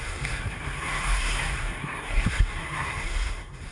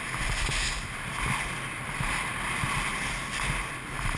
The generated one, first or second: first